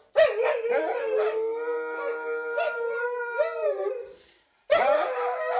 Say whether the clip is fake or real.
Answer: fake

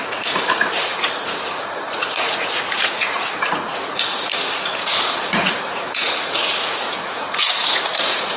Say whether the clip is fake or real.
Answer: fake